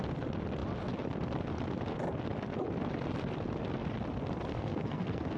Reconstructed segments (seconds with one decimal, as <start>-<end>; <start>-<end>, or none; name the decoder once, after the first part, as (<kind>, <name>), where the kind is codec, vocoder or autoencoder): 4.5-5.4 (codec, SNAC)

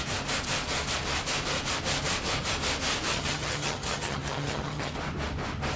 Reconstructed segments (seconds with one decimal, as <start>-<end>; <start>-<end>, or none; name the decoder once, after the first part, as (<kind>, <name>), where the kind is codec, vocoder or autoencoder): 3.1-4.9 (vocoder, HiFi-GAN)

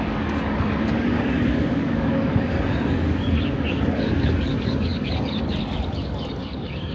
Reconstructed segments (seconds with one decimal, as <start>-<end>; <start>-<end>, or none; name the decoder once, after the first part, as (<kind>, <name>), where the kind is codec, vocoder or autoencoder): 0.0-6.9 (codec, DAC)

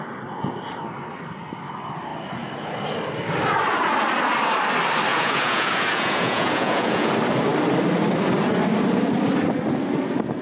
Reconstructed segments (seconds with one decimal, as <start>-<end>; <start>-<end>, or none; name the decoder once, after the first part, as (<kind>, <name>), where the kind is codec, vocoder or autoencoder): 5.1-7.1 (vocoder, Vocos)

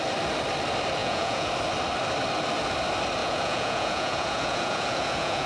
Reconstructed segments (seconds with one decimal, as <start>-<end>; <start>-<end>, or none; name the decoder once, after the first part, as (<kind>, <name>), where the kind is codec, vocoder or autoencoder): 1.0-1.5 (vocoder, Vocos); 3.2-5.5

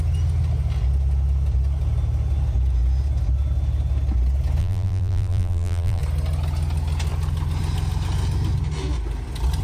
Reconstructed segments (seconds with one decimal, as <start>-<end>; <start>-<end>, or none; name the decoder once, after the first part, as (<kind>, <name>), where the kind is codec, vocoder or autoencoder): 4.6-6.0 (vocoder, BigVGAN v2)